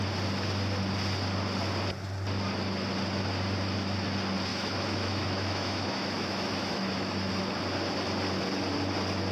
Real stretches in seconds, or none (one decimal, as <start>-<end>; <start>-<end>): 0.0-4.5; 7.3-9.3